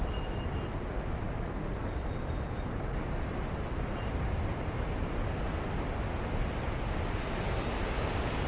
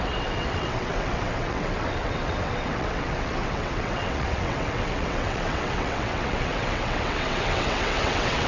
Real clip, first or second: first